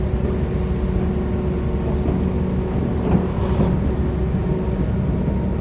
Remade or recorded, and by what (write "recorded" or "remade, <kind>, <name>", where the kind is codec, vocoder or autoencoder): recorded